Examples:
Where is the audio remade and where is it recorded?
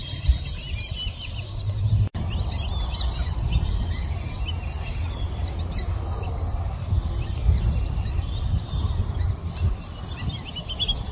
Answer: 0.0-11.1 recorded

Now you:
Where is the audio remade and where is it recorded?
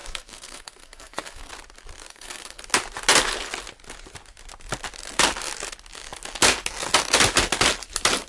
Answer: 0.0-1.5 remade; 1.5-2.1 recorded; 2.1-2.6 remade; 2.6-8.3 recorded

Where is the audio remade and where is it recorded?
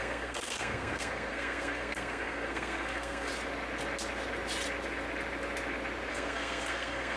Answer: 0.0-3.3 remade; 3.3-6.1 recorded; 6.1-7.2 remade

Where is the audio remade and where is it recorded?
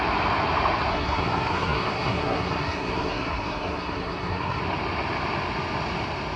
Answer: 0.0-0.9 recorded; 0.9-4.6 remade; 4.6-6.4 recorded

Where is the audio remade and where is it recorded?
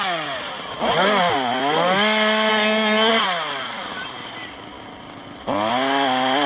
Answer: 0.0-2.5 recorded; 2.5-3.1 remade; 3.1-6.5 recorded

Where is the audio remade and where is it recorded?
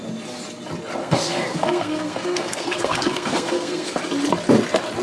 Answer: 0.0-1.0 recorded; 1.0-4.0 remade; 4.0-5.0 recorded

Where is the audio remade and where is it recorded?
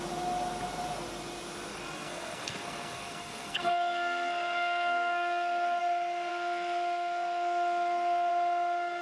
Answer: 0.0-1.7 recorded; 1.7-5.8 remade; 5.8-6.3 recorded; 6.3-8.3 remade; 8.3-9.0 recorded